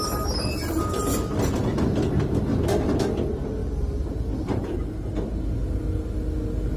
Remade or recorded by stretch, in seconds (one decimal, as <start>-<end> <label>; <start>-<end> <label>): 0.0-2.5 recorded; 2.5-3.0 remade; 3.0-3.6 recorded; 3.6-5.4 remade; 5.4-6.8 recorded